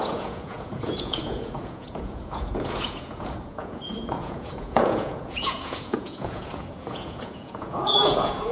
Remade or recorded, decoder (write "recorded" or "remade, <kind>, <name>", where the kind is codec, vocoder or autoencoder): remade, vocoder, Vocos